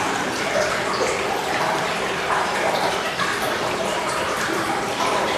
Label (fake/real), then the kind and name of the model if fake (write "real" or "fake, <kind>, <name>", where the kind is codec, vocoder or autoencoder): fake, vocoder, BigVGAN v2